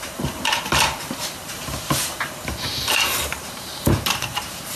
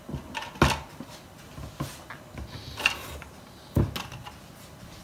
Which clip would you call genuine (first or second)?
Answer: second